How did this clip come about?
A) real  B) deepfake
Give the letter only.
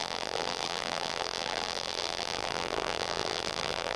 B